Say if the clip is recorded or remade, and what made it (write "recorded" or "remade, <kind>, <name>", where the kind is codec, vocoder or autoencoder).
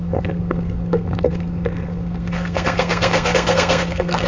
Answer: remade, codec, SNAC